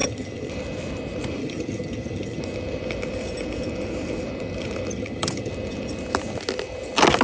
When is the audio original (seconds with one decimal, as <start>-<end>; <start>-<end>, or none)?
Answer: 0.5-1.4; 2.4-4.9; 5.5-7.2